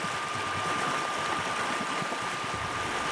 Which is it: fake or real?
real